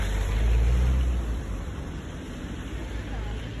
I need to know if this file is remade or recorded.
remade